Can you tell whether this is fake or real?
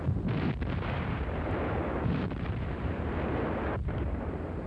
fake